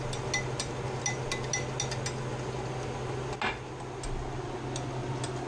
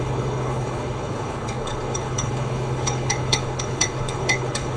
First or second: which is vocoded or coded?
second